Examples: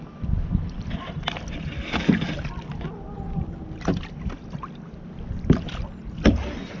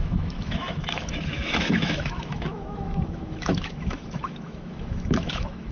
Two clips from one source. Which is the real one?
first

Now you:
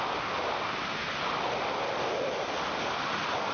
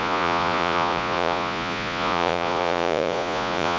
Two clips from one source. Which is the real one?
first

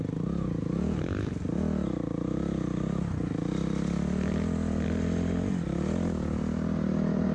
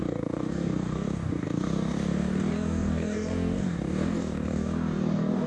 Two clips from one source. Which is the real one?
first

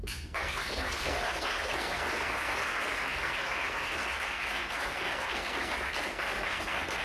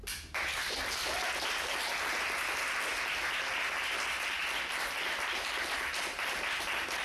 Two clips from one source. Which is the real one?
second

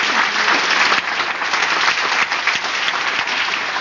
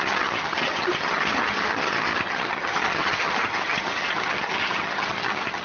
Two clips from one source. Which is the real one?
first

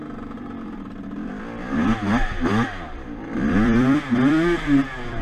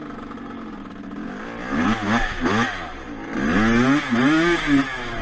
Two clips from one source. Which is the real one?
second